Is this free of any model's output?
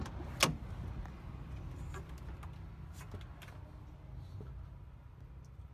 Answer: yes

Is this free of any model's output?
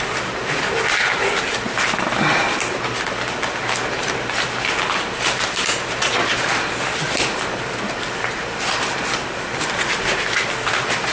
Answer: yes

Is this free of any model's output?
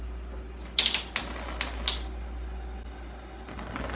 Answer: yes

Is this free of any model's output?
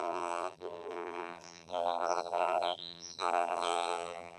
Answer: no